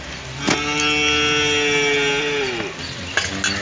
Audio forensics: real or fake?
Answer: real